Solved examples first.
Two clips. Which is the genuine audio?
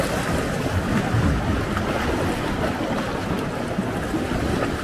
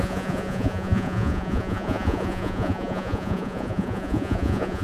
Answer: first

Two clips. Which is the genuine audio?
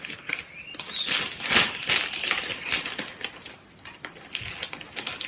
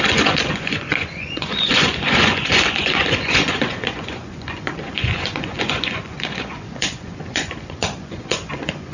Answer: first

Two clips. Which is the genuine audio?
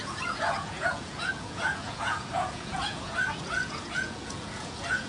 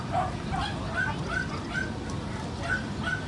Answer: second